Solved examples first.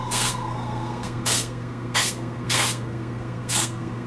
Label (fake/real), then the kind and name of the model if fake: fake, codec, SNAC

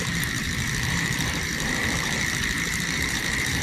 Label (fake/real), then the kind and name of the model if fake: fake, vocoder, BigVGAN v2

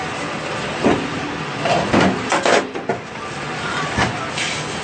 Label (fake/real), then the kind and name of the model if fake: real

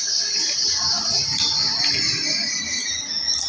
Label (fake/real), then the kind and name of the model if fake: real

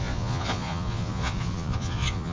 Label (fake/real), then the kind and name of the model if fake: fake, vocoder, Vocos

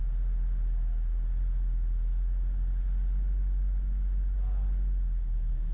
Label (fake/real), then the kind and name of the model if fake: real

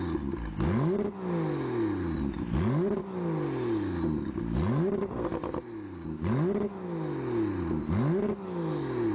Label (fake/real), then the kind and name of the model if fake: real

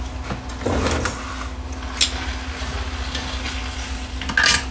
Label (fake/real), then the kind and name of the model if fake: real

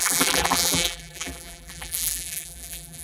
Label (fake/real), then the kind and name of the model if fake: fake, vocoder, BigVGAN v2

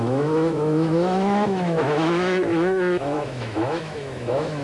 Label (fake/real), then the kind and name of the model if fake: fake, autoencoder, DAC-VAE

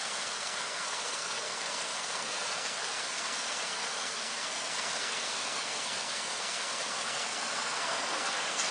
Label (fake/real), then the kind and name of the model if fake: fake, codec, SNAC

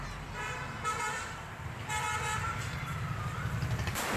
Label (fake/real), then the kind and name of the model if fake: fake, vocoder, BigVGAN v2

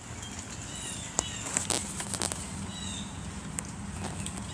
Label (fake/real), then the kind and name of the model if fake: real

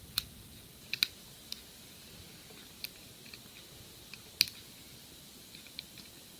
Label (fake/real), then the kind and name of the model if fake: real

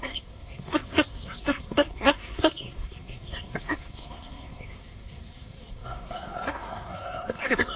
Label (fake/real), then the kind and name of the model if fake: fake, codec, SNAC